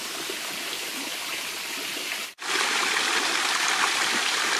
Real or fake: real